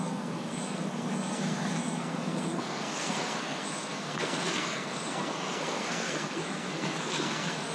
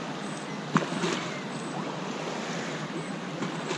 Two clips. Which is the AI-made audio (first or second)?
first